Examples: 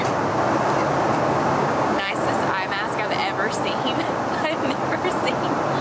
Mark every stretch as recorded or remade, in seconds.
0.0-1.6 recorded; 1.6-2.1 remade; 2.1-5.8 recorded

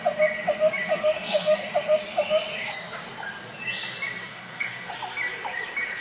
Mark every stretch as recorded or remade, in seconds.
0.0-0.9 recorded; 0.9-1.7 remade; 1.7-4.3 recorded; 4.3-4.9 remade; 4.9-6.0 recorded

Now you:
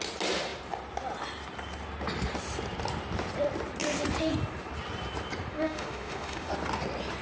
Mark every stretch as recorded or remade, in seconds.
0.0-5.5 recorded; 5.5-6.5 remade; 6.5-7.2 recorded

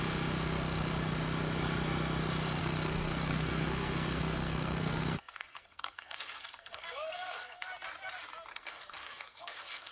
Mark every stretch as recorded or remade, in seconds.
0.0-2.6 recorded; 2.6-7.7 remade; 7.7-8.5 recorded; 8.5-9.9 remade

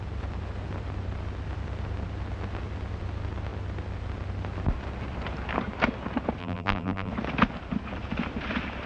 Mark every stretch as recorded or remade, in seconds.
0.0-6.4 recorded; 6.4-7.1 remade; 7.1-8.9 recorded

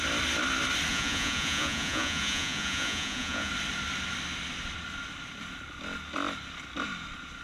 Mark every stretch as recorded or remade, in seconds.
0.0-0.9 recorded; 0.9-3.5 remade; 3.5-7.4 recorded

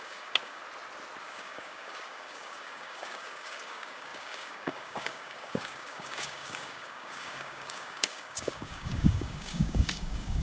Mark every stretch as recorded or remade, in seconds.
0.0-0.6 remade; 0.6-1.2 recorded; 1.2-10.4 remade

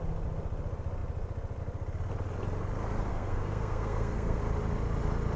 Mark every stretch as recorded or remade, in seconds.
0.0-3.1 recorded; 3.1-4.4 remade; 4.4-5.4 recorded